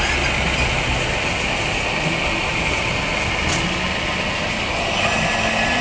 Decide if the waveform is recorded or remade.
recorded